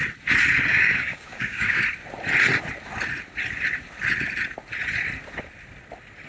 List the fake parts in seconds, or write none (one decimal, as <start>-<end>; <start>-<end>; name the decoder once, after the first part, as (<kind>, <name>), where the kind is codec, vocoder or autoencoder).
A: 0.7-1.8 (codec, DAC)